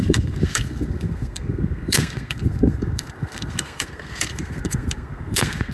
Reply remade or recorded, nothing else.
remade